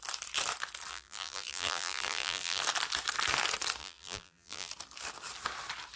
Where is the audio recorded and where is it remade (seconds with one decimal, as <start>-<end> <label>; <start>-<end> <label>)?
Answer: 0.0-0.9 recorded; 0.9-2.6 remade; 2.6-3.8 recorded; 3.8-4.7 remade; 4.7-6.0 recorded